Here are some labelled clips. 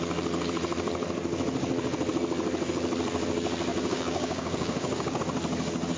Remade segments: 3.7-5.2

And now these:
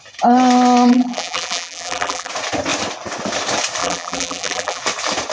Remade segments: 0.9-2.3; 3.8-4.8

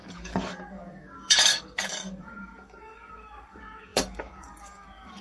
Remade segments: 0.0-5.2

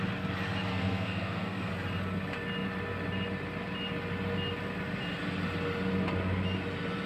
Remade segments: 0.7-1.7

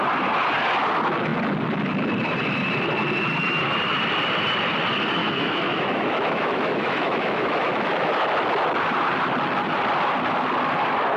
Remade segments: 5.2-8.1

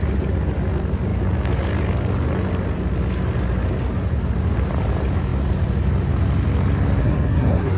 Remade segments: 7.0-7.8